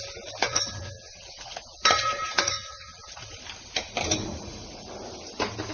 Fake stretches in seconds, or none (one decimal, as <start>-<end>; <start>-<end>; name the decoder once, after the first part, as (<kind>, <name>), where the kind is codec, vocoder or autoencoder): 0.4-3.3 (vocoder, Vocos); 4.3-4.9

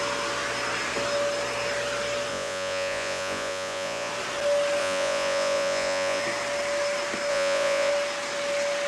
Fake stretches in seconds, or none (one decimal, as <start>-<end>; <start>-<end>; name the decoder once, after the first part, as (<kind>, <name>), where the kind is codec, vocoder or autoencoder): 2.3-4.1 (vocoder, Vocos); 4.8-6.2; 7.3-7.9

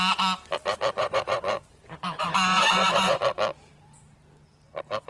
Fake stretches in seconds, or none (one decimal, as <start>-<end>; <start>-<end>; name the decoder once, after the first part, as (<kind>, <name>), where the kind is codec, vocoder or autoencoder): 1.0-3.2 (vocoder, Vocos)

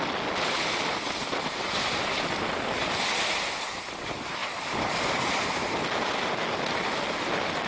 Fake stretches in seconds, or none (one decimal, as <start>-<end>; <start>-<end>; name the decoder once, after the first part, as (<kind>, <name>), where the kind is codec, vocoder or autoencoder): none

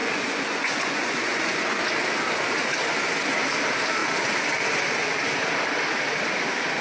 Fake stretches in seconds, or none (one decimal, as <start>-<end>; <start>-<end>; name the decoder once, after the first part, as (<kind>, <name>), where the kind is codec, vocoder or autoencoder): 0.0-1.8 (vocoder, Vocos)

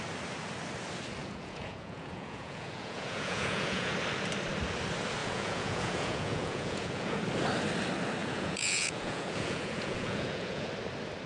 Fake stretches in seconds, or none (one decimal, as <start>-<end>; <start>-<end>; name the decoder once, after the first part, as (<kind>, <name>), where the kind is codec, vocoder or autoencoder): 1.2-3.9 (vocoder, Vocos); 5.2-7.2; 8.2-10.7